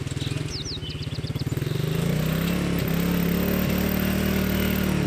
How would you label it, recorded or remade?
recorded